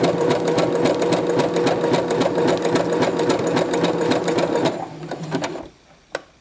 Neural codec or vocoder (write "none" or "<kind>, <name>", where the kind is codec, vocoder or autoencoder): none